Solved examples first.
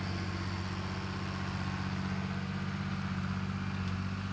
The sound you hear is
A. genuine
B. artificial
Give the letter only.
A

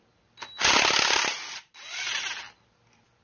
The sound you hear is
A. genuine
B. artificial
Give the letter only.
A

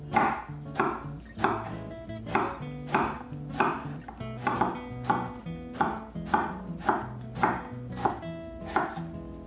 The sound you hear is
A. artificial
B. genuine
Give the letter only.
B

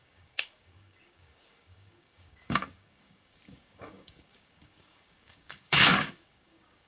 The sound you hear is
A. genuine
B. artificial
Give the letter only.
B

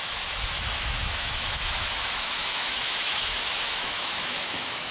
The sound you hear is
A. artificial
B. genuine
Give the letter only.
A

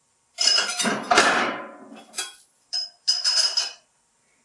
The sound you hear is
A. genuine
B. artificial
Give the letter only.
B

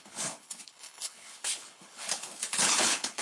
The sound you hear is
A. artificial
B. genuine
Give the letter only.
A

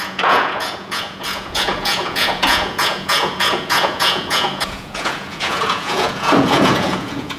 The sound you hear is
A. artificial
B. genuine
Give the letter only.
A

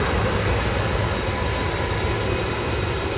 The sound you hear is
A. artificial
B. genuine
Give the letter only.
B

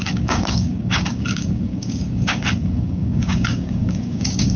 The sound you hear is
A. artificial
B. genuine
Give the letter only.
A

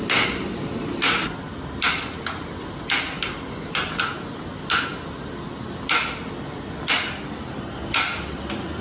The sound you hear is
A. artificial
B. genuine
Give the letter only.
B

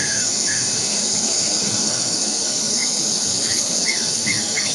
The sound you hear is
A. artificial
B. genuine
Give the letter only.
A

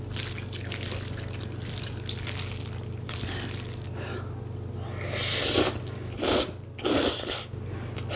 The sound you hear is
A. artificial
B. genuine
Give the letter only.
B